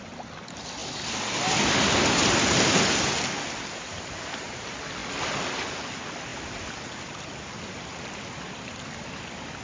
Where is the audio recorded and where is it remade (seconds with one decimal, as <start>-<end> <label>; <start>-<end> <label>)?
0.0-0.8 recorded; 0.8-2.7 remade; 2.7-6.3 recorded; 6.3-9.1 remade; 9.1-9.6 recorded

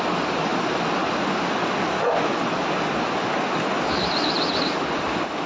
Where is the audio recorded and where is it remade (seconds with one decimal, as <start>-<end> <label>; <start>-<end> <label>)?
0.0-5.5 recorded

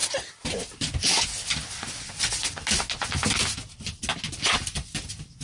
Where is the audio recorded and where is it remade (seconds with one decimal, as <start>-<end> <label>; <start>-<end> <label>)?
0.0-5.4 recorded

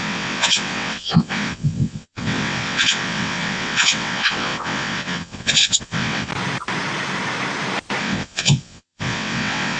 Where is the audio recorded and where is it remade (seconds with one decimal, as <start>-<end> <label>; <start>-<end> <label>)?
0.0-6.3 remade; 6.3-8.0 recorded; 8.0-9.8 remade